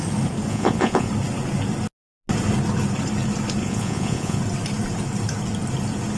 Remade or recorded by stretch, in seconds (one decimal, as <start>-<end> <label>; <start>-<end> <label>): 0.0-0.5 recorded; 0.5-1.1 remade; 1.1-3.6 recorded; 3.6-4.4 remade; 4.4-6.2 recorded